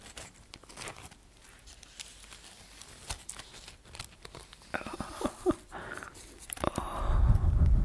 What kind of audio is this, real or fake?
fake